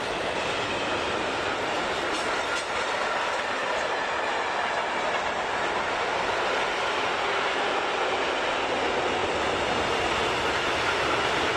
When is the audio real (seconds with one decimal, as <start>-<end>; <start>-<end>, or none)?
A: 0.0-11.6